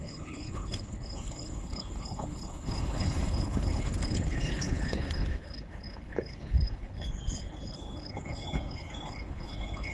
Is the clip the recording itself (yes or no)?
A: no